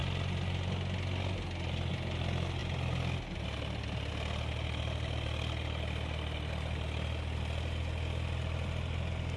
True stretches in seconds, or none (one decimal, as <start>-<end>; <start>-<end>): 0.0-9.4